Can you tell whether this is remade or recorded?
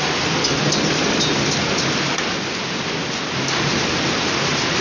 recorded